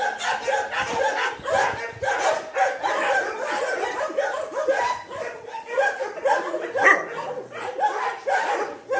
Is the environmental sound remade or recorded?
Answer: recorded